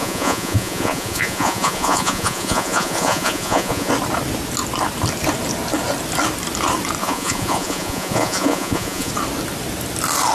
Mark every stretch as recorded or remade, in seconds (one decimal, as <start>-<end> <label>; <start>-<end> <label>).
0.0-3.9 remade; 3.9-7.0 recorded; 7.0-9.1 remade; 9.1-10.3 recorded